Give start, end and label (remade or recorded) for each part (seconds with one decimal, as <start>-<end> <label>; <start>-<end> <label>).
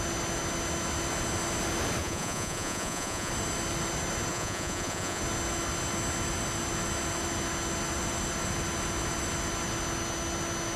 0.0-2.0 recorded; 2.0-3.3 remade; 3.3-4.3 recorded; 4.3-5.2 remade; 5.2-10.8 recorded